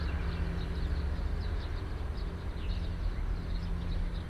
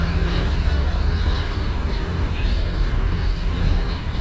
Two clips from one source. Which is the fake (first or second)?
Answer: second